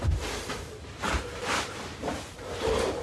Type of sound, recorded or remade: remade